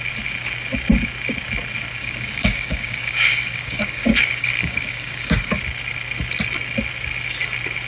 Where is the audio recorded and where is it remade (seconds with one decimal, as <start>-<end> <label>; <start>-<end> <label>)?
0.0-2.0 recorded; 2.0-5.6 remade; 5.6-7.9 recorded